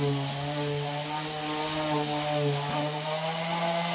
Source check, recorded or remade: recorded